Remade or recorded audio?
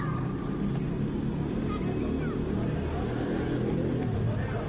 recorded